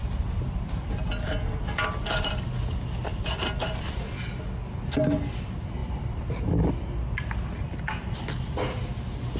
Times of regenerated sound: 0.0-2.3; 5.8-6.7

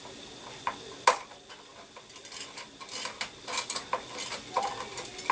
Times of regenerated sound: none

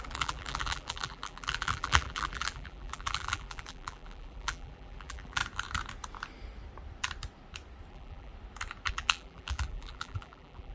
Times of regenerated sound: 0.0-5.4; 7.9-8.3; 8.9-10.7

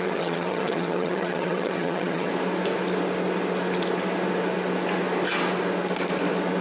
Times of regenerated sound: 0.0-2.3

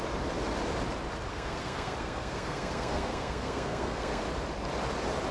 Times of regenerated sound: 1.3-4.2

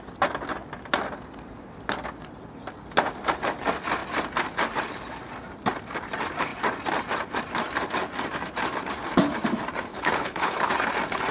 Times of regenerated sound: 9.9-10.7